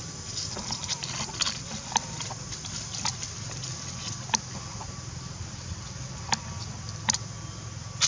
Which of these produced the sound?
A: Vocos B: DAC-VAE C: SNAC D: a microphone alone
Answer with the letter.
D